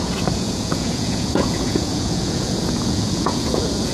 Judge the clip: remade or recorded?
remade